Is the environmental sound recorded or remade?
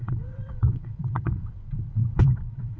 remade